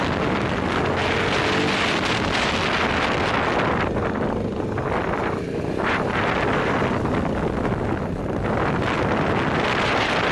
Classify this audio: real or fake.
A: real